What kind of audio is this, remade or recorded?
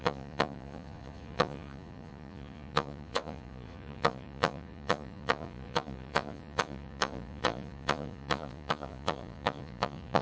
remade